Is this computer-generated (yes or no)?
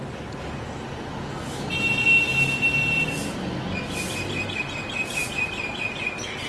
no